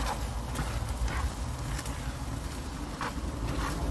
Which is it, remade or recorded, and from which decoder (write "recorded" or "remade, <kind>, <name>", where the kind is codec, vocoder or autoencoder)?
recorded